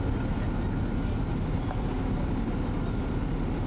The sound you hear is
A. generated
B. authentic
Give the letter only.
B